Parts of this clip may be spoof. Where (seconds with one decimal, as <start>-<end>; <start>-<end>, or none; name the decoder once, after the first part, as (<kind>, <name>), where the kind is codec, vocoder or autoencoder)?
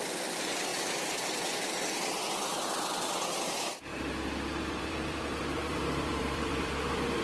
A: 0.0-0.7 (vocoder, BigVGAN v2); 2.2-3.9; 4.7-7.2